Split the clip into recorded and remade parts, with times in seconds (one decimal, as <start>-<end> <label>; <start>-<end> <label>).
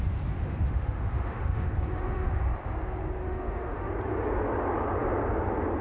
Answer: 0.0-0.4 recorded; 0.4-2.3 remade; 2.3-3.2 recorded; 3.2-3.9 remade; 3.9-5.8 recorded